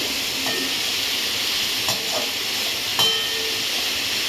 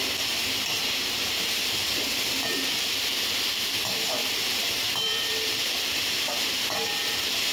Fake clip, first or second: second